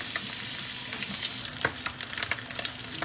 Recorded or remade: recorded